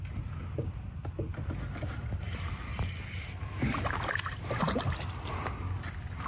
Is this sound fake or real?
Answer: real